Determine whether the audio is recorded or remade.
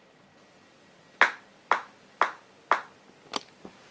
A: recorded